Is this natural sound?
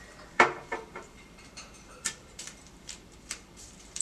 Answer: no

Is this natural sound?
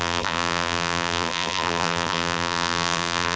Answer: no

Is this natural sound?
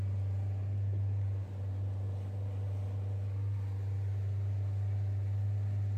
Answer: yes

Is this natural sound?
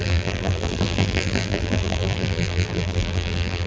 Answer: no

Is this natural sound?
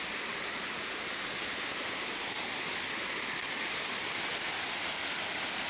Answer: yes